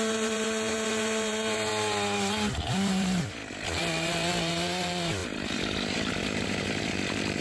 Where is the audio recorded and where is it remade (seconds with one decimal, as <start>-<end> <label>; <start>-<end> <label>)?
0.0-1.7 remade; 1.7-2.7 recorded; 2.7-3.4 remade; 3.4-4.5 recorded; 4.5-7.4 remade